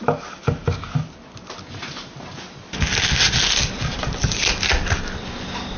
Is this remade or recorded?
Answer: recorded